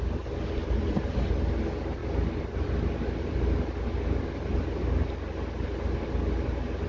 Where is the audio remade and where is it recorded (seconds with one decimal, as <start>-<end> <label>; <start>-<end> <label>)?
0.0-6.9 recorded